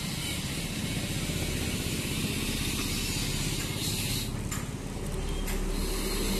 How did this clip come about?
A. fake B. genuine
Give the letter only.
B